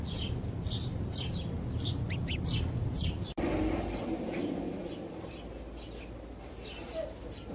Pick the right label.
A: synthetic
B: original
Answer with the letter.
B